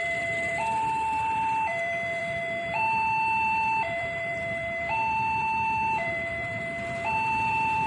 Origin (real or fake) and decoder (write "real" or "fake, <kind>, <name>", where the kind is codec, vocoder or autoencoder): fake, vocoder, BigVGAN v2